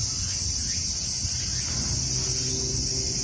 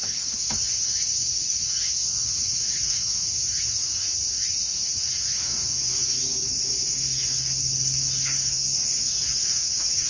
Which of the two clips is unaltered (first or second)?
first